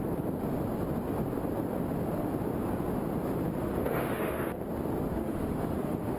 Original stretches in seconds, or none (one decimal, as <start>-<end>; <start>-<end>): 0.0-3.6; 4.5-5.1